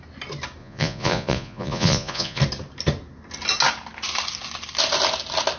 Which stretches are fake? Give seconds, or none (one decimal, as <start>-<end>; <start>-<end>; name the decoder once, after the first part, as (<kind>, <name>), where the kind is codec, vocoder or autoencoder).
0.6-2.4 (vocoder, Vocos)